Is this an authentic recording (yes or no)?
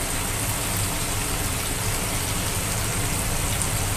yes